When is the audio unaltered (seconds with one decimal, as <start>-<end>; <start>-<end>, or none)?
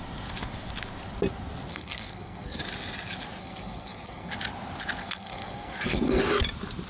0.0-1.7; 2.6-3.4; 4.3-5.0; 6.2-6.9